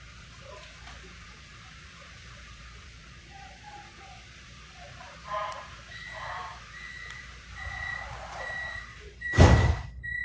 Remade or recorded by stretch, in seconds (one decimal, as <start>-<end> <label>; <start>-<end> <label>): 0.0-10.2 remade